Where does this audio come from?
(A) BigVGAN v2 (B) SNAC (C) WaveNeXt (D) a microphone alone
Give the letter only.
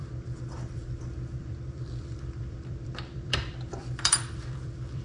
A